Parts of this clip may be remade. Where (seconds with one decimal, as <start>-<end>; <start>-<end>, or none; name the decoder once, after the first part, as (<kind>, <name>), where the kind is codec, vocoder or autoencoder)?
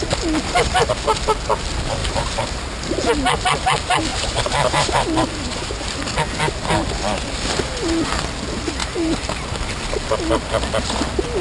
2.0-2.9 (vocoder, BigVGAN v2); 4.1-6.0; 8.8-9.8